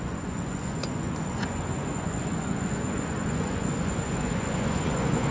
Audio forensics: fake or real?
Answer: fake